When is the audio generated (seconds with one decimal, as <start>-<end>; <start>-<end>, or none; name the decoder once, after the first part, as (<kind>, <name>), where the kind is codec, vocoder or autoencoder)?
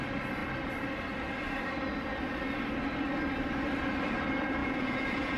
4.6-5.4 (vocoder, Vocos)